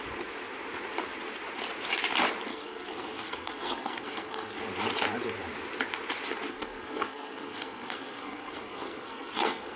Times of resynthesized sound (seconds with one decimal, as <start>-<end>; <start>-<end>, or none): 2.5-4.6; 6.5-9.8